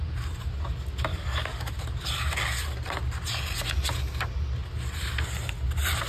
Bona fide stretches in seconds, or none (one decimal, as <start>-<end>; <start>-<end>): 0.0-1.1; 1.7-6.1